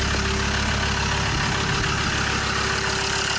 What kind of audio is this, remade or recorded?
recorded